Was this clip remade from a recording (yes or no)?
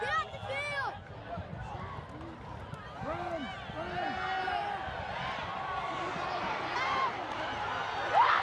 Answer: no